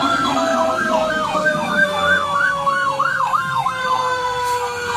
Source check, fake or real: fake